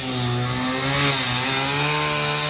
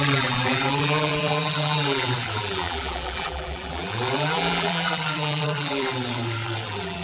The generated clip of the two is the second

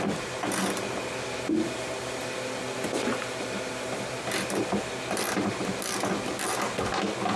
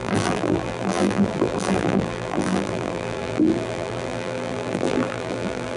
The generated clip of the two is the second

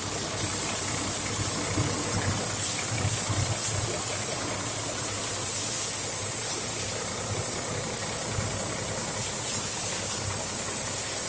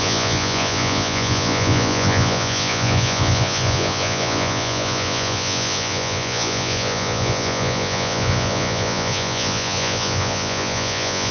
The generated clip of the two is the second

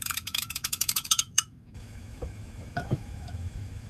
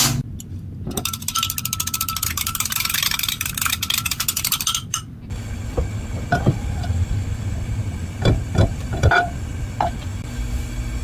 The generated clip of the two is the first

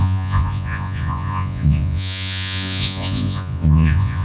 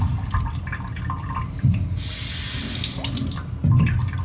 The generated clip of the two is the first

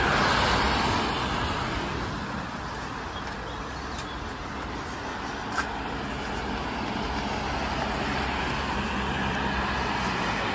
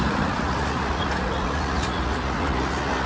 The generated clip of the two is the second